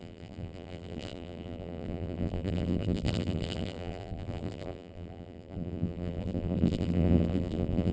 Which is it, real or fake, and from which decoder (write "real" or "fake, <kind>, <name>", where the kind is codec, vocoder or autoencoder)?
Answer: fake, vocoder, BigVGAN v2